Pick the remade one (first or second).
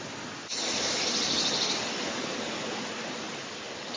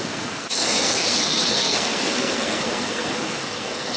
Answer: second